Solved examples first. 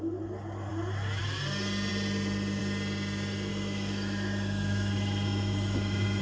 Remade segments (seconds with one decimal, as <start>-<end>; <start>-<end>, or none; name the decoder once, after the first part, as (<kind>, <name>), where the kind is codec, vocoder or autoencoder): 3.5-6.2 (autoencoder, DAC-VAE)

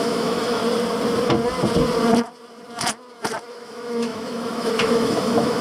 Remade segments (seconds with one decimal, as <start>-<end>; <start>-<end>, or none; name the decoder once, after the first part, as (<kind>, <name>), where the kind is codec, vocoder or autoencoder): 0.0-0.6 (autoencoder, DAC-VAE); 3.5-5.6

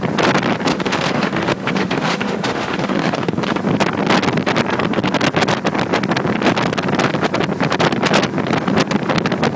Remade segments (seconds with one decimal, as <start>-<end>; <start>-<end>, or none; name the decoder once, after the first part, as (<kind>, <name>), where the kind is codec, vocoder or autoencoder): 0.7-3.6 (autoencoder, DAC-VAE)